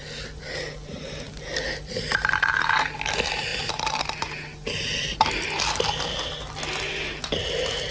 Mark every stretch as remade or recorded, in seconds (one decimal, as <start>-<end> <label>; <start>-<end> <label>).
0.0-7.9 recorded